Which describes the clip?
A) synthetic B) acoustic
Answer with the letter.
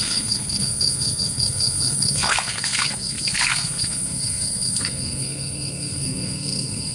A